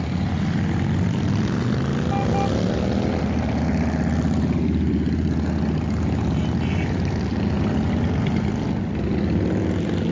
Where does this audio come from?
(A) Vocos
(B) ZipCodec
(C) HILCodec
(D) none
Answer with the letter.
D